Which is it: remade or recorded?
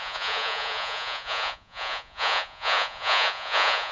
remade